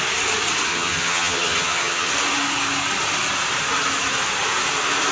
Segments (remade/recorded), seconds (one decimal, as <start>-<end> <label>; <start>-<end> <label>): 0.0-0.7 recorded; 0.7-2.1 remade; 2.1-5.1 recorded